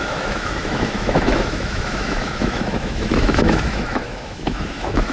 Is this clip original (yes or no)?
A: no